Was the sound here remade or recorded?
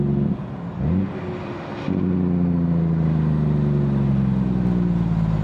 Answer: recorded